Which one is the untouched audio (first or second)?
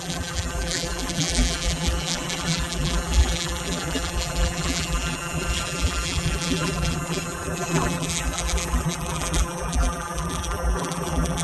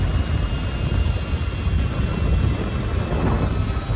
second